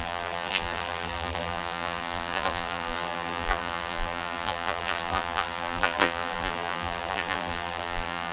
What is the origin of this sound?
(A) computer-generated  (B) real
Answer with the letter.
A